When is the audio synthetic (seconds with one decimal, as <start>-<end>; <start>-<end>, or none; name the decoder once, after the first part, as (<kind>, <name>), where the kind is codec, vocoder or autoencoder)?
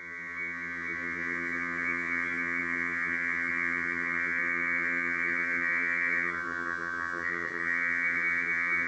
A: 0.0-8.9 (vocoder, HiFi-GAN)